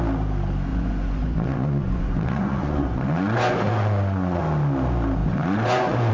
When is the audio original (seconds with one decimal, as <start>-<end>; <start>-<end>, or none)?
0.0-0.7; 4.4-5.2